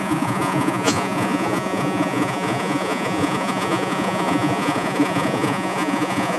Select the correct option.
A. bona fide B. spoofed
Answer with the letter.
B